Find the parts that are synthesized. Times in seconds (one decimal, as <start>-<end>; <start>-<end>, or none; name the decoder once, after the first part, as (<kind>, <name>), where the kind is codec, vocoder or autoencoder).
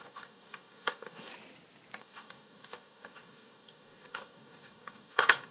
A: 0.0-1.3 (codec, DAC); 2.0-5.5